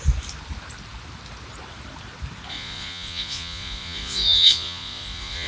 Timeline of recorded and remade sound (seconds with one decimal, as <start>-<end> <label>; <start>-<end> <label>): 0.0-2.5 recorded; 2.5-5.5 remade